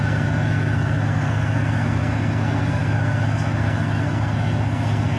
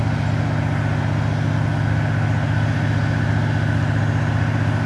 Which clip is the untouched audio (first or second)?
second